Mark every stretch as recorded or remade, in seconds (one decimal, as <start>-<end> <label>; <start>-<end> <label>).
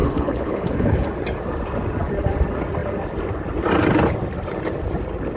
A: 0.0-1.1 remade; 1.1-5.4 recorded